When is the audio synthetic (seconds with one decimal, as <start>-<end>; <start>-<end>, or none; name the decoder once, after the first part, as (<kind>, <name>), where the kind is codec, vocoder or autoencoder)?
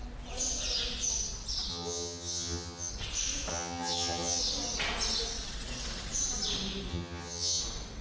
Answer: 1.7-2.9 (vocoder, HiFi-GAN); 3.5-4.4; 6.9-7.6